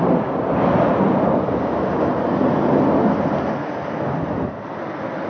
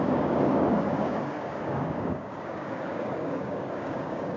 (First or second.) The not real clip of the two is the second